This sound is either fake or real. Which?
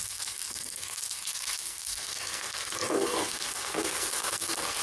fake